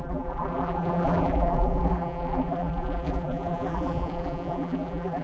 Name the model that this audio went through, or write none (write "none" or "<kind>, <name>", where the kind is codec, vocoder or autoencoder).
vocoder, BigVGAN v2